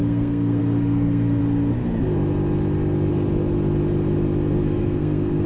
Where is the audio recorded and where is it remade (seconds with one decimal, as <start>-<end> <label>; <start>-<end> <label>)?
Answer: 0.0-1.4 remade; 1.4-4.5 recorded; 4.5-5.5 remade